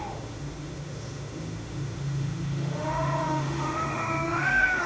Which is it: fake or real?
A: fake